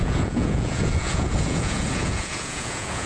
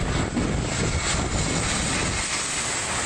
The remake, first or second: first